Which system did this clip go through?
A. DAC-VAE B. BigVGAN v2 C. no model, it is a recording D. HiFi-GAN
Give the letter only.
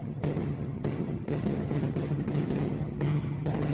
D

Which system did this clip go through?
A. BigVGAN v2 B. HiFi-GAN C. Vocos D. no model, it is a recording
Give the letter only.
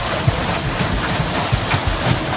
D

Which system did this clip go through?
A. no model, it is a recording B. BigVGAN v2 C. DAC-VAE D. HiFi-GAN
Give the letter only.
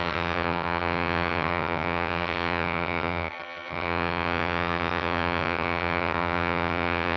D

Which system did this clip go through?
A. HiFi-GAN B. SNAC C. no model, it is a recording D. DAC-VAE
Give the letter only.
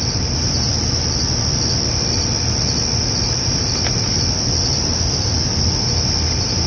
C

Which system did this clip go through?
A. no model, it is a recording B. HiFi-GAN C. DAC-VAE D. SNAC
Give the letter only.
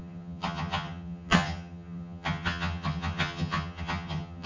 B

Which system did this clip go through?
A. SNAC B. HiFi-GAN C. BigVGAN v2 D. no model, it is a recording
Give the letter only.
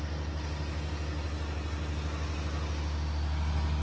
D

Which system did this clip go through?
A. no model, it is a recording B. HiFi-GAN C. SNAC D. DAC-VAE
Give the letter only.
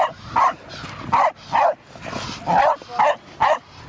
A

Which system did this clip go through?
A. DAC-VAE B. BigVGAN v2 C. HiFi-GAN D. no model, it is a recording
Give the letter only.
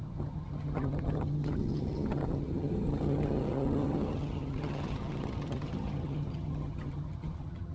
C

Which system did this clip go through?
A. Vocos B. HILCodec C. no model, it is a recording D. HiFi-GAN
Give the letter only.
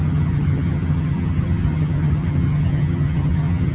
D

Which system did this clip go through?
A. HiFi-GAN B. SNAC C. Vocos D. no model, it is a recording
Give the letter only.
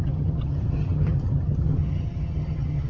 A